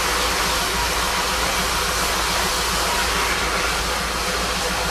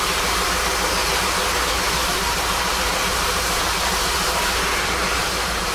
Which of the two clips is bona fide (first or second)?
first